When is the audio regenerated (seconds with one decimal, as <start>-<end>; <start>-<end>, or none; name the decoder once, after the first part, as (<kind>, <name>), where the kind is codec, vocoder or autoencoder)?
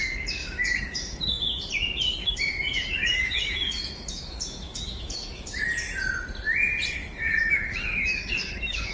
0.4-1.4 (autoencoder, DAC-VAE); 2.2-5.6; 7.0-8.9